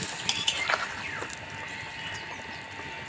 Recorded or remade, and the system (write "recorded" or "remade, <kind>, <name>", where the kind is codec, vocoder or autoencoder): recorded